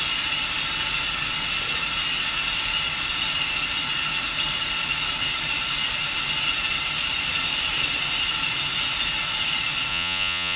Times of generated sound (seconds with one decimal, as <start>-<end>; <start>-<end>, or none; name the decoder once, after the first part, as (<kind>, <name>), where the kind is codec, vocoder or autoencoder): 9.9-10.6 (vocoder, Vocos)

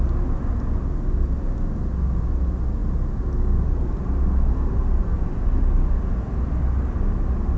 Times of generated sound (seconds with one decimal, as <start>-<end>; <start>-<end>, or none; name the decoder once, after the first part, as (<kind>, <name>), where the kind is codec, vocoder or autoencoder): none